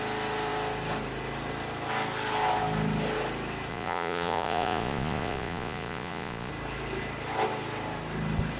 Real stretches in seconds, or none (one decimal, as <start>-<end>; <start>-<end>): 0.0-3.7; 6.5-8.6